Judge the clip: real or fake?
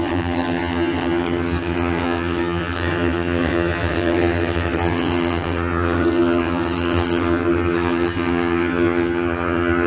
fake